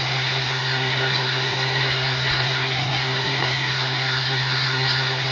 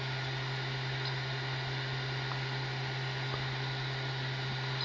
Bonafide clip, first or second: second